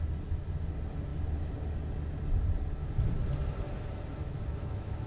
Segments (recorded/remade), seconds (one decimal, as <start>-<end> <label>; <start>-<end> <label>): 0.0-4.2 recorded; 4.2-5.1 remade